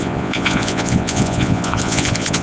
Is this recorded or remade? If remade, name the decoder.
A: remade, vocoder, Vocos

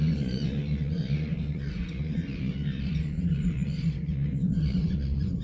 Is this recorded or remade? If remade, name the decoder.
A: remade, vocoder, Vocos